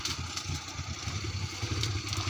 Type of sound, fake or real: fake